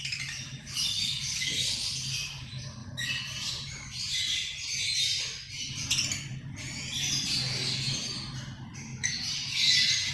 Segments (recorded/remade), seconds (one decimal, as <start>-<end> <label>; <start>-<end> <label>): 0.0-10.1 recorded